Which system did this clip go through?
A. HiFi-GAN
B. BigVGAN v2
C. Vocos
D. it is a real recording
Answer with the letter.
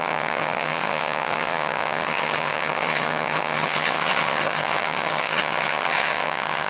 A